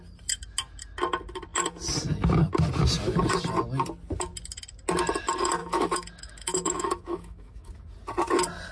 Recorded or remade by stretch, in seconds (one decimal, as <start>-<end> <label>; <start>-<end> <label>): 0.0-5.6 recorded; 5.6-7.7 remade; 7.7-8.7 recorded